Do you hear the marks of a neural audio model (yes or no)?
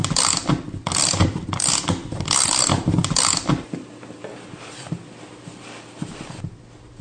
no